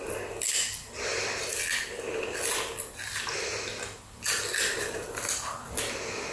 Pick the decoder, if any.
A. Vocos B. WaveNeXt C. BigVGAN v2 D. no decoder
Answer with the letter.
D